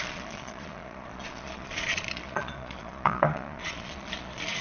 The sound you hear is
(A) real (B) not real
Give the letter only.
B